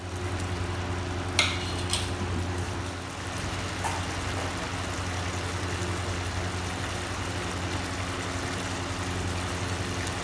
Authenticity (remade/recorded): recorded